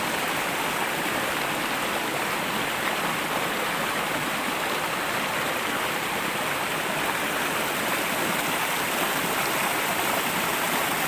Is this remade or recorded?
recorded